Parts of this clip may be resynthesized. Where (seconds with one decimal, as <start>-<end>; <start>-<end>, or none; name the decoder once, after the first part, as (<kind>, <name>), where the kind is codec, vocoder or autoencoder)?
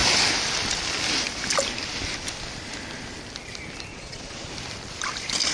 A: 3.9-4.5 (vocoder, Vocos)